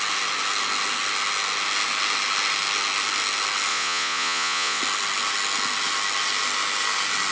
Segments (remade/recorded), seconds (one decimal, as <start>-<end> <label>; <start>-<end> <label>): 0.0-3.7 recorded; 3.7-4.8 remade; 4.8-7.3 recorded